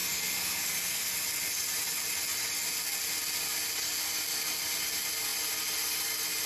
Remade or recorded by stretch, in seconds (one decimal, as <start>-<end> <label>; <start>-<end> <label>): 0.0-1.1 remade; 1.1-6.5 recorded